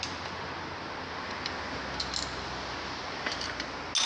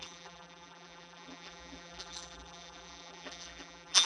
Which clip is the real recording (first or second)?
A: first